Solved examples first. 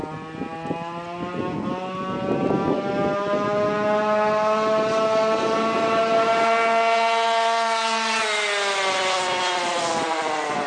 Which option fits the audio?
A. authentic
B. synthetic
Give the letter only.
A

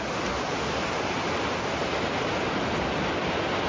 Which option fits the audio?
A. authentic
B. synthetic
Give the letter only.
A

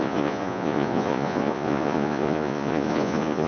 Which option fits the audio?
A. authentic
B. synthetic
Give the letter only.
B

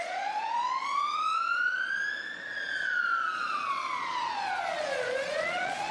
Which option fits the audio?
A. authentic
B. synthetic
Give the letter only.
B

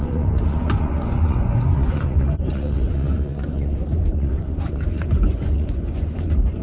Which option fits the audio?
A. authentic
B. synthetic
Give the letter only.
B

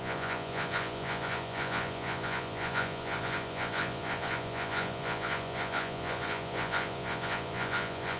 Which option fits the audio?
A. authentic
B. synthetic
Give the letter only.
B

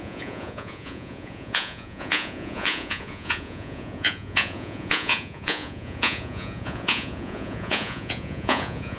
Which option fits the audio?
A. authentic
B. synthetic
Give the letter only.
B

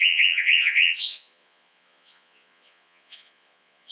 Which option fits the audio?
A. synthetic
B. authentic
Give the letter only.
A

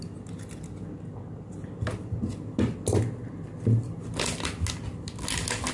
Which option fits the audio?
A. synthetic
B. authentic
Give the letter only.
B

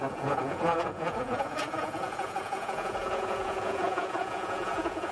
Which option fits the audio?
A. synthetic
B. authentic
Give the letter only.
A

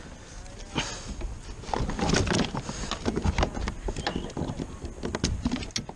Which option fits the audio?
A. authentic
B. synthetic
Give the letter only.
A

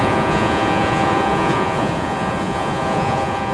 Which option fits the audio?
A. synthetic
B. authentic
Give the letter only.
A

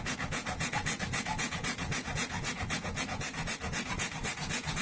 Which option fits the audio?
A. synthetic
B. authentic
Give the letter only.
A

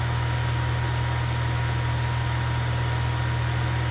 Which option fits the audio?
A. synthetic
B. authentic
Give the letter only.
B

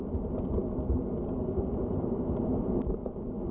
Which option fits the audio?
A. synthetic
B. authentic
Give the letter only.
B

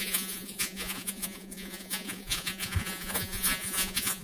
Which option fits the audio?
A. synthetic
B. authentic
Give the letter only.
A